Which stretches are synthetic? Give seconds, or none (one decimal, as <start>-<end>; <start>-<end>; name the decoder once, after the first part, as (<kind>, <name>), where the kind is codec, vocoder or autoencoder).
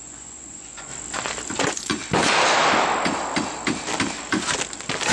0.0-0.9 (vocoder, Vocos); 1.6-2.0